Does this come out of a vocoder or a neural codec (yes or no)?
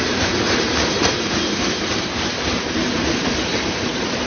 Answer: yes